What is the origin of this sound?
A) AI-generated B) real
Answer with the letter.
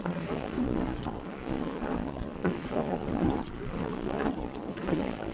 A